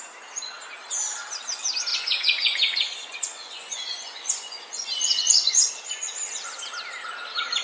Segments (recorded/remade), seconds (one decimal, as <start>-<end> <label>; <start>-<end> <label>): 0.0-1.9 recorded; 1.9-5.7 remade; 5.7-7.6 recorded